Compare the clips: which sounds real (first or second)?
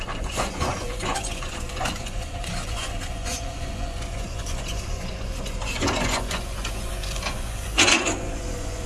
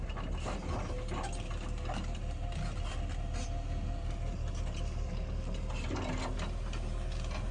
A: second